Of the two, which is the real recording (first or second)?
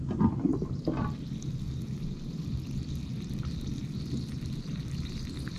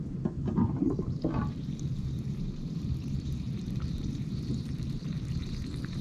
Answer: first